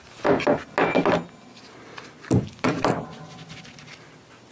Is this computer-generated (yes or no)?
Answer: no